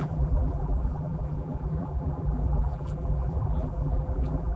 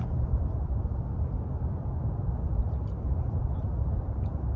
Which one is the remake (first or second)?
first